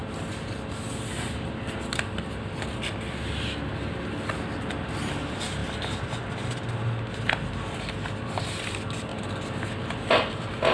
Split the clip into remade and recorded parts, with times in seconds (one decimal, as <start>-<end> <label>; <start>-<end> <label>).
0.0-10.7 recorded